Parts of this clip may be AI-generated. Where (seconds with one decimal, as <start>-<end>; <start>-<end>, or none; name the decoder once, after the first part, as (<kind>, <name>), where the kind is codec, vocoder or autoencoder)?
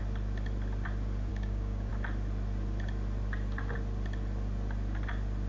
1.3-1.9 (codec, DAC)